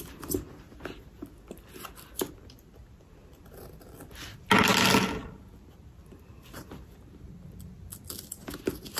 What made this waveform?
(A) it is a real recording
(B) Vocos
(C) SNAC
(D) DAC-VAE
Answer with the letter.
A